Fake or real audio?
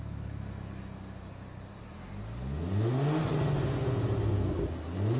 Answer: real